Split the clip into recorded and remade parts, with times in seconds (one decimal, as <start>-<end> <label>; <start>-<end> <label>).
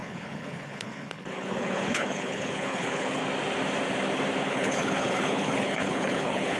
0.0-3.2 remade; 3.2-4.5 recorded; 4.5-6.6 remade